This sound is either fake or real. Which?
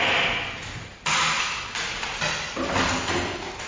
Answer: real